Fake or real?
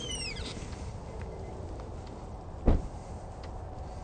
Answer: real